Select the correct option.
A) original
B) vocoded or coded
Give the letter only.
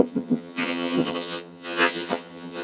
B